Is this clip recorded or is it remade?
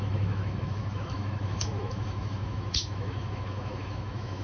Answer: remade